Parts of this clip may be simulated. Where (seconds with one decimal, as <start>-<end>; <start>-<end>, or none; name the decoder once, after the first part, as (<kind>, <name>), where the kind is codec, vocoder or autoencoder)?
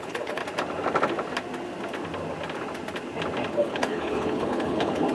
0.0-0.4 (codec, HILCodec); 3.5-5.1